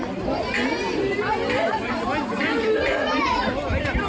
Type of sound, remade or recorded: recorded